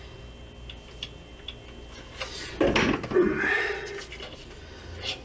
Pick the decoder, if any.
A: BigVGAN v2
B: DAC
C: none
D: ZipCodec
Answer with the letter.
C